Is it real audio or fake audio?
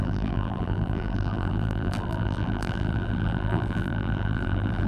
fake